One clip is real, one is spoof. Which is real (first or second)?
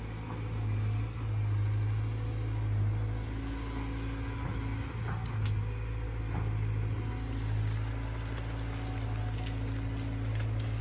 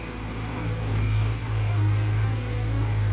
first